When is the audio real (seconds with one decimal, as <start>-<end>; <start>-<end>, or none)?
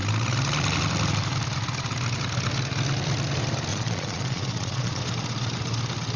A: 0.0-3.7; 5.0-6.2